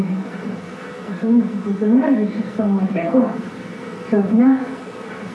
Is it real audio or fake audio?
fake